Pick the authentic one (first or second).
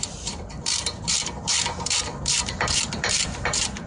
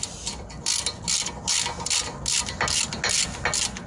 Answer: second